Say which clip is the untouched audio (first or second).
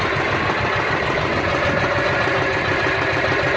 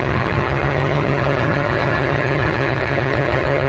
first